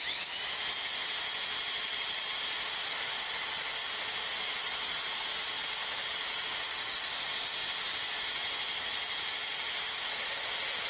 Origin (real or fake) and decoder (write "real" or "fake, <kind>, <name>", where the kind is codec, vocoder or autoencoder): real